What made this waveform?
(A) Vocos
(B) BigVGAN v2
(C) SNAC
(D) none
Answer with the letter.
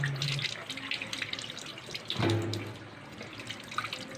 D